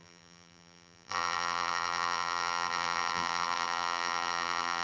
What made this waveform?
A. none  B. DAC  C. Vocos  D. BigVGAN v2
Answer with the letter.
D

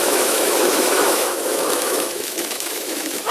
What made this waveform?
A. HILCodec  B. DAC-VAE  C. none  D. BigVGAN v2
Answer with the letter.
B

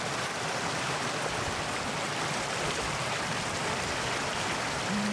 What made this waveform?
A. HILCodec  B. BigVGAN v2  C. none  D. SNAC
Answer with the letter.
B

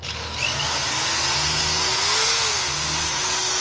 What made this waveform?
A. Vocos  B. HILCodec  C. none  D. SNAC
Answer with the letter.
C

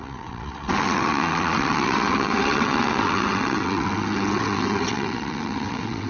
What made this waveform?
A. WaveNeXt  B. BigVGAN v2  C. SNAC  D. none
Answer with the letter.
A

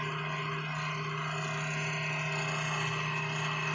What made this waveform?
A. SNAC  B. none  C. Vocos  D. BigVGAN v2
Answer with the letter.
B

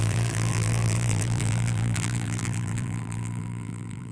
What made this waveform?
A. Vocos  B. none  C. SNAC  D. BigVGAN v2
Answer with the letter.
D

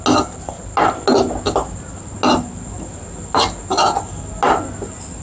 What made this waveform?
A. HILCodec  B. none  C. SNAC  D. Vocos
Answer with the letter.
B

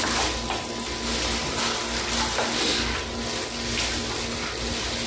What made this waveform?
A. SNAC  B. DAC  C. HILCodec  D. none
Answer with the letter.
D